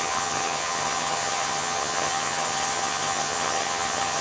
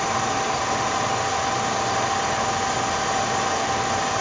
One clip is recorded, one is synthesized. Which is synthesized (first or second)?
first